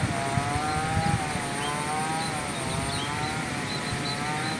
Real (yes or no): yes